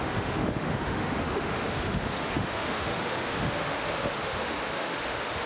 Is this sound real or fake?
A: fake